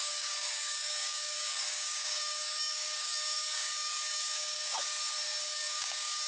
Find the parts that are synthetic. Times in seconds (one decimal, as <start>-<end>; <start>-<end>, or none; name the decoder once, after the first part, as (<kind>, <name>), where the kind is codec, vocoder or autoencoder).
0.0-4.9 (codec, DAC); 5.5-6.3